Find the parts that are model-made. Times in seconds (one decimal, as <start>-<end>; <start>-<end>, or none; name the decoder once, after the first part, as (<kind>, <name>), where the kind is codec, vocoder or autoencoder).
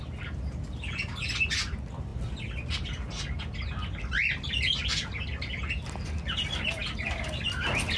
none